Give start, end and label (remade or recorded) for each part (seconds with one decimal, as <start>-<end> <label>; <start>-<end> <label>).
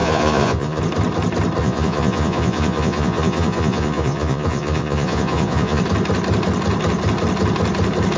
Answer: 0.0-0.8 remade; 0.8-1.6 recorded; 1.6-5.8 remade; 5.8-8.2 recorded